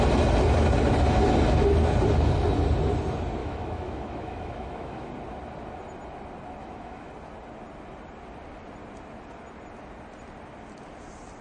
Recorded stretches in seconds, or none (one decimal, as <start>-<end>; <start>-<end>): 0.0-3.4; 5.1-6.6; 7.1-11.4